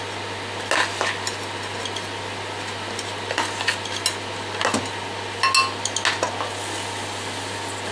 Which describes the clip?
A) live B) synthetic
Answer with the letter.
A